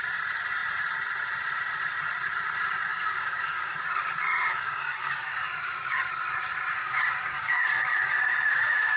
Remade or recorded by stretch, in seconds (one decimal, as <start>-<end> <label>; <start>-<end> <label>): 0.0-2.9 recorded; 2.9-3.7 remade; 3.7-4.2 recorded; 4.2-6.1 remade; 6.1-6.8 recorded; 6.8-9.0 remade